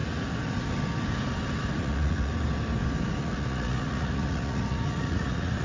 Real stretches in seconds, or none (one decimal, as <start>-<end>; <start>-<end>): 0.0-1.7; 2.3-3.2